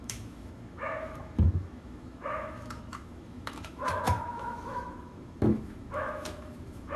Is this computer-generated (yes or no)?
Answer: yes